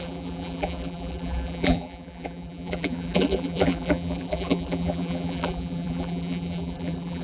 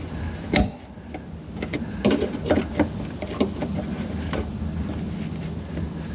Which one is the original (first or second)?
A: second